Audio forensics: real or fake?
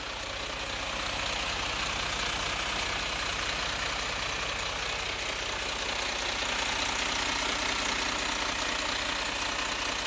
real